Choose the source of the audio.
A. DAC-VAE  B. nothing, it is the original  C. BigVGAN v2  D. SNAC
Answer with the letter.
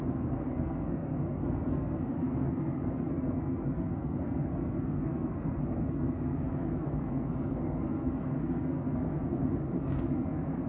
D